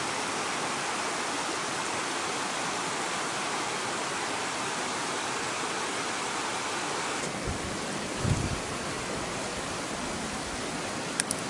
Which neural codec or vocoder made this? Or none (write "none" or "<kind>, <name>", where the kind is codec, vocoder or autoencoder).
none